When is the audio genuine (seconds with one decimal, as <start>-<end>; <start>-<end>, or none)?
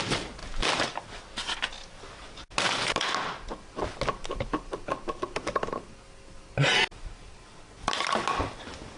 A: 0.0-0.4; 1.2-9.0